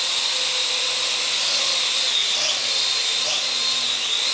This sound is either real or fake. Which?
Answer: real